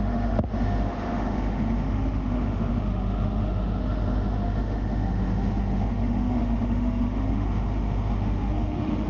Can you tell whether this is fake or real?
fake